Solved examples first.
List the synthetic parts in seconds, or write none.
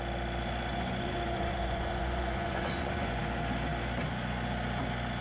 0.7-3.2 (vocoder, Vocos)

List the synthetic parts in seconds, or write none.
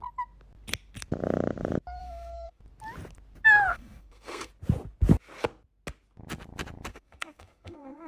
2.0-2.6 (codec, SNAC); 3.7-4.5; 6.9-8.1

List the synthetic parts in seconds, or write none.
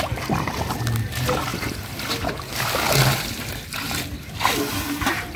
none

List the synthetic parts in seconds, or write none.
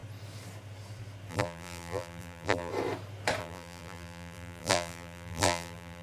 1.3-2.7 (vocoder, BigVGAN v2); 3.4-6.0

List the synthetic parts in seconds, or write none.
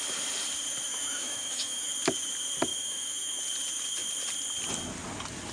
0.9-1.9 (autoencoder, DAC-VAE); 2.7-3.4